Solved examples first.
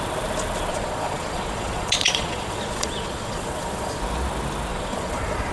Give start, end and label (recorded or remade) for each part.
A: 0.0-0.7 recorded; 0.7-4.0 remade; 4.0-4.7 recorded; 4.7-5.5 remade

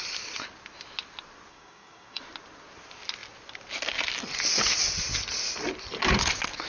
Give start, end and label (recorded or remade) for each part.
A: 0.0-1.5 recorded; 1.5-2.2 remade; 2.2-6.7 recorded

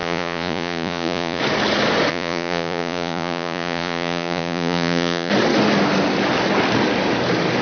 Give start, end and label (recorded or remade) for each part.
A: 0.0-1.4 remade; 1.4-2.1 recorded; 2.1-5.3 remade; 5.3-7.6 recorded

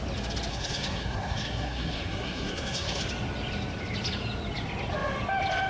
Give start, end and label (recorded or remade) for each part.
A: 0.0-0.5 recorded; 0.5-3.0 remade; 3.0-5.7 recorded

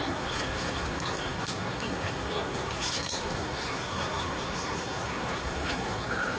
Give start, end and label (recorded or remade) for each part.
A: 0.0-6.4 remade

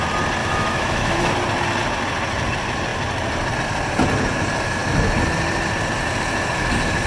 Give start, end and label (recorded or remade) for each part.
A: 0.0-0.4 recorded; 0.4-1.3 remade; 1.3-7.1 recorded

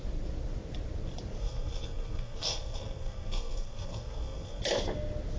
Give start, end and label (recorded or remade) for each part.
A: 0.0-1.4 recorded; 1.4-4.6 remade; 4.6-5.4 recorded